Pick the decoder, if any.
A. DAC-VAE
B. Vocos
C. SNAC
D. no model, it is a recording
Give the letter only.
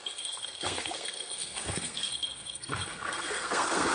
C